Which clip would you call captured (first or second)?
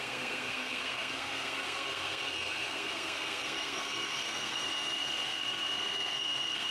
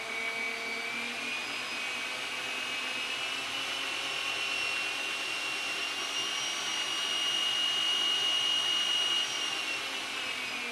second